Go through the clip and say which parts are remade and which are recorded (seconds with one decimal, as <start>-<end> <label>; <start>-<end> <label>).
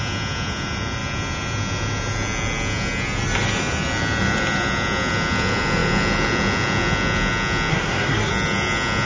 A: 0.0-7.7 recorded; 7.7-8.3 remade; 8.3-9.1 recorded